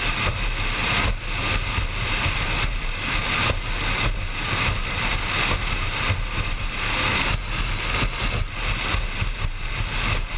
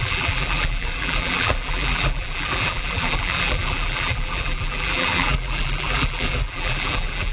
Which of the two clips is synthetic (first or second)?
second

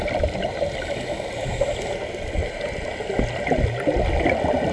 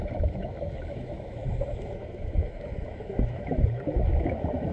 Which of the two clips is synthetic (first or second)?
second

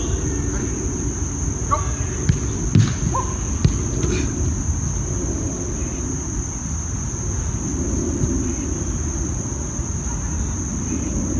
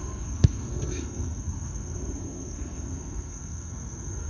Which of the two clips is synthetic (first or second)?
second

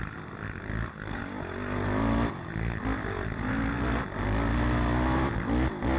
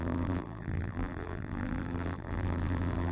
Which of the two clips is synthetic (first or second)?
second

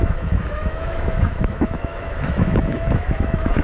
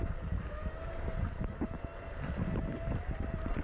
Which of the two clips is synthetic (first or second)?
first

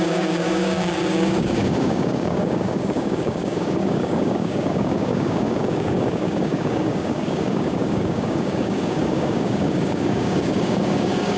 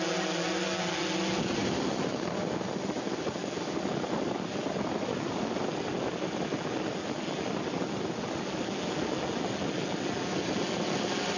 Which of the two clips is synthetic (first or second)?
first